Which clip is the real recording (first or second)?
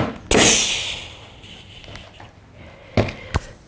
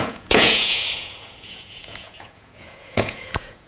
first